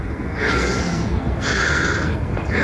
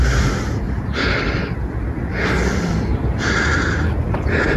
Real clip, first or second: second